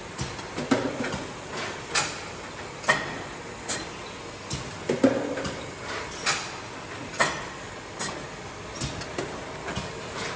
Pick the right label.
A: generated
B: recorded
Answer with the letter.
B